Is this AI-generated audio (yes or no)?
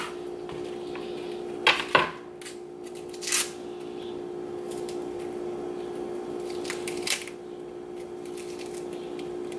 no